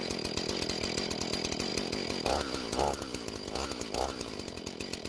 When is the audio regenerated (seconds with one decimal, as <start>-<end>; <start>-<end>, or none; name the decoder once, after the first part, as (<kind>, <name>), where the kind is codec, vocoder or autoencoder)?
none